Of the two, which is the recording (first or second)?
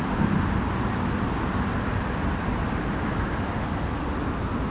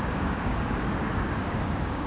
first